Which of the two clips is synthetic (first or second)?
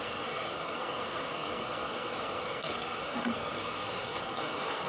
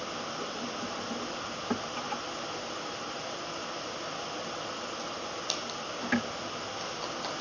first